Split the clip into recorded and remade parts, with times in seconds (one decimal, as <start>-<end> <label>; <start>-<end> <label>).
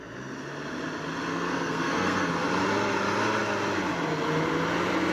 0.0-1.3 recorded; 1.3-2.3 remade; 2.3-5.1 recorded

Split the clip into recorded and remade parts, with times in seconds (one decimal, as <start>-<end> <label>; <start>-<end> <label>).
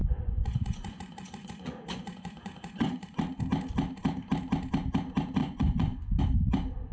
0.0-3.2 remade; 3.2-5.4 recorded; 5.4-6.2 remade; 6.2-6.9 recorded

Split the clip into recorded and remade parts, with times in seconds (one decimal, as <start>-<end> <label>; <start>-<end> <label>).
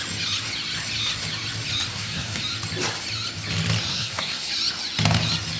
0.0-1.9 recorded; 1.9-2.4 remade; 2.4-3.9 recorded; 3.9-4.5 remade; 4.5-5.6 recorded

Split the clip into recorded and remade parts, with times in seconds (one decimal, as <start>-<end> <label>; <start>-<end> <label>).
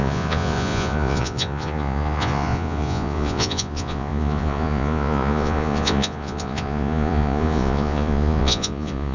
0.0-9.1 remade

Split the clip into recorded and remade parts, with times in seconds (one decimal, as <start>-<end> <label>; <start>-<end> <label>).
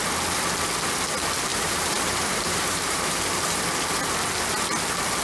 0.0-1.5 recorded; 1.5-3.6 remade; 3.6-5.2 recorded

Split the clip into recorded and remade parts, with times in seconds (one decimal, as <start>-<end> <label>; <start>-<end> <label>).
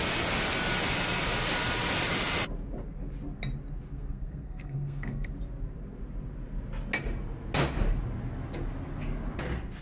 0.0-3.9 recorded; 3.9-5.3 remade; 5.3-9.8 recorded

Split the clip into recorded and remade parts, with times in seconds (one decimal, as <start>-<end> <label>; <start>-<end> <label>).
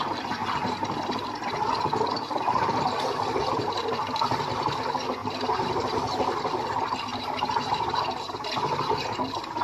0.0-5.2 recorded; 5.2-5.7 remade; 5.7-7.1 recorded; 7.1-7.6 remade; 7.6-9.6 recorded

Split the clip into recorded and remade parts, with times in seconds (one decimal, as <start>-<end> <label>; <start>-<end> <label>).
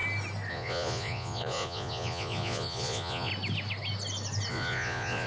0.0-0.5 recorded; 0.5-3.3 remade; 3.3-4.5 recorded; 4.5-5.3 remade